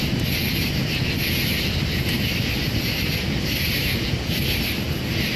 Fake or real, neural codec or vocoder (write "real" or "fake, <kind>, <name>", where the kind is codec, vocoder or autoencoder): real